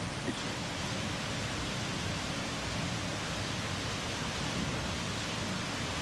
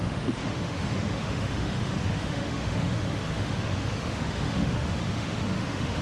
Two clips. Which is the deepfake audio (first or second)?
second